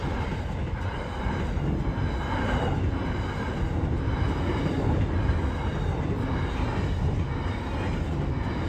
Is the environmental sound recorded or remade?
recorded